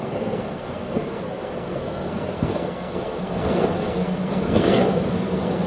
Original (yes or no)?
no